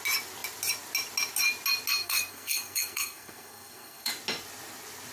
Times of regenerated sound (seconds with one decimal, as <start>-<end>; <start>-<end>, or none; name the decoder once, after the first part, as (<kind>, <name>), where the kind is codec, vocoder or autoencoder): 2.0-4.1 (codec, SNAC)